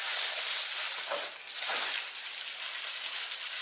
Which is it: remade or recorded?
recorded